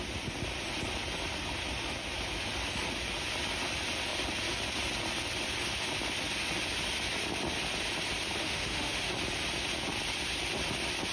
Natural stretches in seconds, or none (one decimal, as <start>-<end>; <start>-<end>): 0.0-8.4; 9.1-11.1